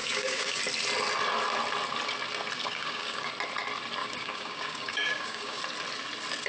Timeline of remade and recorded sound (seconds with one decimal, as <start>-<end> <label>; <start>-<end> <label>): 0.0-0.6 remade; 0.6-2.6 recorded; 2.6-3.3 remade; 3.3-4.0 recorded; 4.0-5.6 remade; 5.6-6.5 recorded